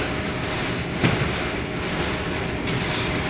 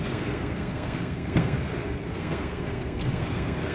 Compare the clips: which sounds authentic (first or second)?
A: first